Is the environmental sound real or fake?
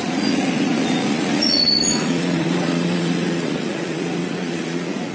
fake